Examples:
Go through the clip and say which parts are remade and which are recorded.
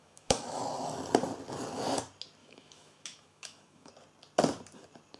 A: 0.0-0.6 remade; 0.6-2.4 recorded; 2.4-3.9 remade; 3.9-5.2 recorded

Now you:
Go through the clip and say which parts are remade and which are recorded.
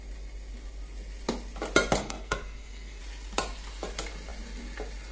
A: 0.0-2.0 recorded; 2.0-3.0 remade; 3.0-5.1 recorded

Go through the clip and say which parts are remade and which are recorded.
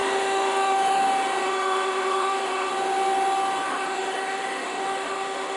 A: 0.0-1.0 remade; 1.0-1.4 recorded; 1.4-2.7 remade; 2.7-3.7 recorded; 3.7-5.6 remade